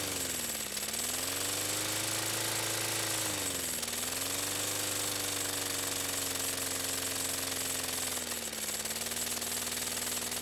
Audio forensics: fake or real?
real